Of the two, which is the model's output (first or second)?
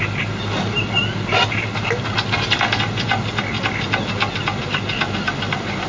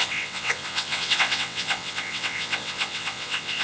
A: second